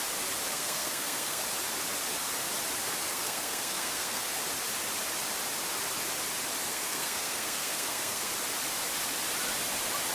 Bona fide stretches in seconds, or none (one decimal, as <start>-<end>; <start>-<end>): 0.0-0.5; 1.4-3.1; 4.4-6.6; 8.3-10.1